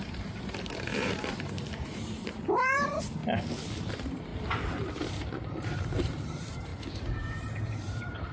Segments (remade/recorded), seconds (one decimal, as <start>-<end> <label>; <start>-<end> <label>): 0.0-3.2 remade; 3.2-3.8 recorded; 3.8-4.3 remade; 4.3-4.8 recorded; 4.8-6.7 remade; 6.7-7.6 recorded; 7.6-8.3 remade